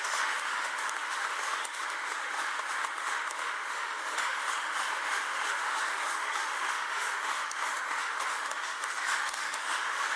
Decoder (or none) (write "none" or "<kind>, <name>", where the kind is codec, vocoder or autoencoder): autoencoder, DAC-VAE